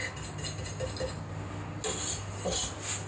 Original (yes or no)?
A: yes